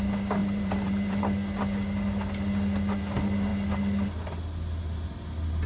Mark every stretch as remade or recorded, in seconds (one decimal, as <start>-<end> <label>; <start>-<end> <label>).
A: 0.0-0.4 recorded; 0.4-1.2 remade; 1.2-5.7 recorded